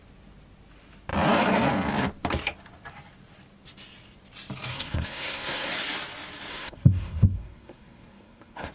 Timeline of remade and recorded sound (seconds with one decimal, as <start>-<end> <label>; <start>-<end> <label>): 0.0-4.7 recorded; 4.7-5.7 remade; 5.7-6.5 recorded; 6.5-8.7 remade